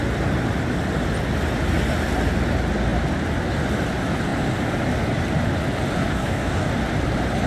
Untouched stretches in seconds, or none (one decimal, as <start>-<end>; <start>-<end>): 0.0-6.1; 6.7-7.5